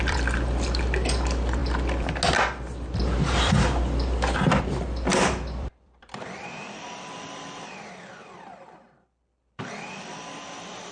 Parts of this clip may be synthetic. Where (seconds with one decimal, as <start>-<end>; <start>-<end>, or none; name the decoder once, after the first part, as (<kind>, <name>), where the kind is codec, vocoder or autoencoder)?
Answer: 0.0-1.6 (vocoder, BigVGAN v2); 4.6-10.9